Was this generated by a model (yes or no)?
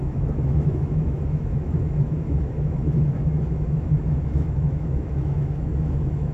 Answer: yes